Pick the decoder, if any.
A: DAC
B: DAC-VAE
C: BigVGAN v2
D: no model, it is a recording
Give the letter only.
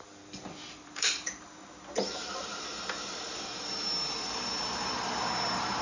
C